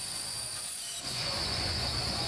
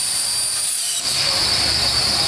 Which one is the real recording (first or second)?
second